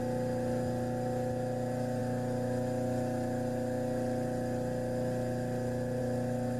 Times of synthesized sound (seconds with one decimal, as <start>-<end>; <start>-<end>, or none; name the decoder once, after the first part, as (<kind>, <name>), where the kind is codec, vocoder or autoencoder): none